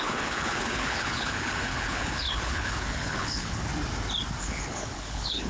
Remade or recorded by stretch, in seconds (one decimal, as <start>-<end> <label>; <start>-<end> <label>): 0.0-3.7 remade; 3.7-4.4 recorded; 4.4-5.5 remade